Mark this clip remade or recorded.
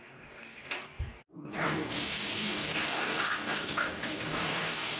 remade